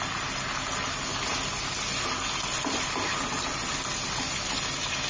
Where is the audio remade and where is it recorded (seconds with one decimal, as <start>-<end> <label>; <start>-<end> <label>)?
0.0-5.1 recorded